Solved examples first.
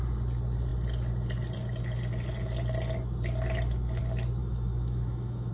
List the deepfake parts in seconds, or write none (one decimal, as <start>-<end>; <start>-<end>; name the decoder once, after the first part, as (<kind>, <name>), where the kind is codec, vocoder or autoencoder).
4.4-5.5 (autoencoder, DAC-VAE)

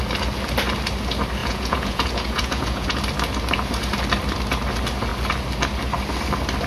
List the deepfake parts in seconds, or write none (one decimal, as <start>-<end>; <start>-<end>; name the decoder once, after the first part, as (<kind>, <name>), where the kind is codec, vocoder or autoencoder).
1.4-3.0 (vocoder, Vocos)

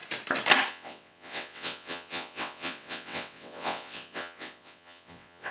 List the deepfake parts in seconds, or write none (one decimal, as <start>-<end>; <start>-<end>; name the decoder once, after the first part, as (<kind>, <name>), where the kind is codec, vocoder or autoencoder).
0.7-5.5 (vocoder, WaveNeXt)

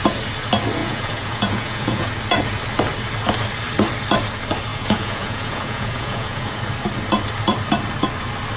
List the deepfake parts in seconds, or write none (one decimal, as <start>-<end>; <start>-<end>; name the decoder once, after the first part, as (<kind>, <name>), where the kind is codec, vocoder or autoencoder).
0.8-2.1 (vocoder, Vocos); 4.7-6.6

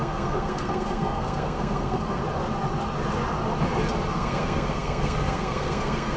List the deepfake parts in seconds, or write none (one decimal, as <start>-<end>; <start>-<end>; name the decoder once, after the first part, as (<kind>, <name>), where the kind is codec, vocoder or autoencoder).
0.0-2.2 (codec, SNAC); 4.1-6.2

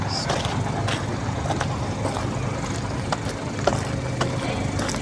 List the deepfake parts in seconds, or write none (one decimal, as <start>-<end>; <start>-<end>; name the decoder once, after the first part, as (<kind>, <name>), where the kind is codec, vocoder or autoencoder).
none

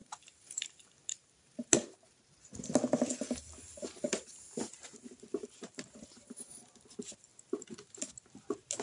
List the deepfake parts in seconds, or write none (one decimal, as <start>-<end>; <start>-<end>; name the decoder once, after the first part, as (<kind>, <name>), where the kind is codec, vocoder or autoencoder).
0.0-2.2 (vocoder, BigVGAN v2); 5.4-6.4